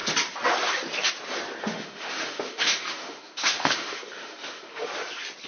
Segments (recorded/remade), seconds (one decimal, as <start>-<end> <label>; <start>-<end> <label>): 0.0-1.6 recorded; 1.6-4.9 remade; 4.9-5.5 recorded